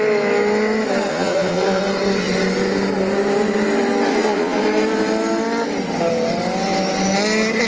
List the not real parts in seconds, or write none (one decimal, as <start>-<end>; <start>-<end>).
1.1-1.8; 4.1-4.6